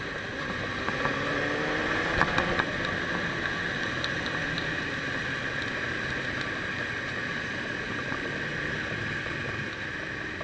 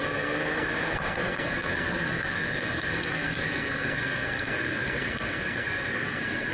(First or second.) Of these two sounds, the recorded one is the first